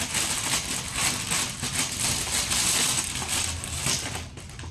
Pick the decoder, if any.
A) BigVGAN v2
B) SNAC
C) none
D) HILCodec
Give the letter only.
C